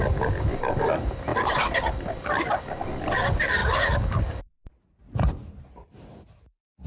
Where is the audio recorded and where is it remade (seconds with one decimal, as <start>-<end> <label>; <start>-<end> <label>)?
0.0-6.9 recorded